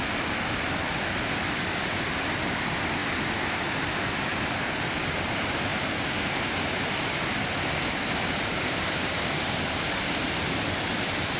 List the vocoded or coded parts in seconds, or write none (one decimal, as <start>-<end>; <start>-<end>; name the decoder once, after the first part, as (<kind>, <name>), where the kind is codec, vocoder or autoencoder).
0.0-5.7 (vocoder, BigVGAN v2); 7.9-11.4